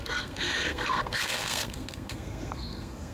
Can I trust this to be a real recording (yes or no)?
no